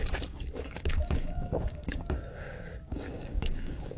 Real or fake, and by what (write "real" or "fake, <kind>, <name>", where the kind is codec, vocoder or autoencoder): fake, codec, DAC